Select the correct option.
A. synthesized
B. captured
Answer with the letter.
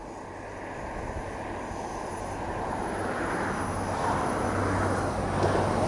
B